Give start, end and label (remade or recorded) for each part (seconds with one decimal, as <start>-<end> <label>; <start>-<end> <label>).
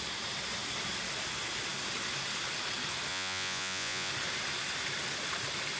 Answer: 0.0-3.1 recorded; 3.1-4.1 remade; 4.1-5.8 recorded